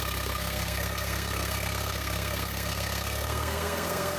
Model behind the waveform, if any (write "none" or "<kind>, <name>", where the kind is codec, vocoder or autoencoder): codec, SNAC